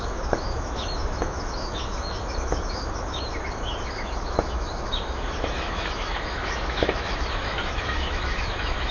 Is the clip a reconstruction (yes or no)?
yes